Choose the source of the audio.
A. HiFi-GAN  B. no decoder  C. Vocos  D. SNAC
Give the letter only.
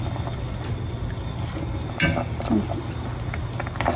B